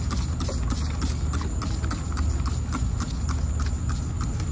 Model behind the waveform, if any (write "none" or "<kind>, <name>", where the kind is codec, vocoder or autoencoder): none